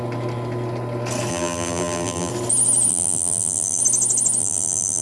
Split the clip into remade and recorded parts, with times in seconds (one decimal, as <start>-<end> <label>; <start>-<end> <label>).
0.0-1.3 recorded; 1.3-2.3 remade; 2.3-2.9 recorded; 2.9-3.8 remade; 3.8-4.4 recorded; 4.4-5.0 remade

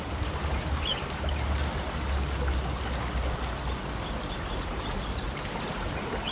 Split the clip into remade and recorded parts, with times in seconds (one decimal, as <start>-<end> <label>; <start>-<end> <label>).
0.0-0.9 remade; 0.9-4.7 recorded; 4.7-6.3 remade

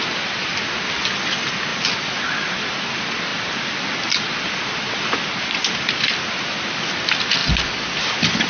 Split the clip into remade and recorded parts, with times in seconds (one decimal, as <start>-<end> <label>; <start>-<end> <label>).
0.0-8.5 recorded

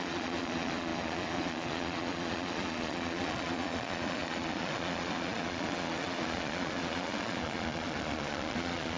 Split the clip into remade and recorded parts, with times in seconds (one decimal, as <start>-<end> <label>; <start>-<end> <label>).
0.0-9.0 remade

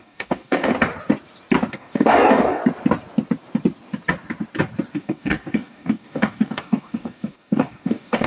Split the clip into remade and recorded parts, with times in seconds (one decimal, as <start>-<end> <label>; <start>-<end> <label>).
0.0-0.7 remade; 0.7-1.7 recorded; 1.7-2.6 remade; 2.6-5.0 recorded; 5.0-8.3 remade

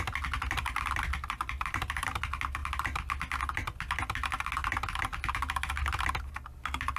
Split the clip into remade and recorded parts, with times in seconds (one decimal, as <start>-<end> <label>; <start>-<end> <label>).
0.0-7.0 recorded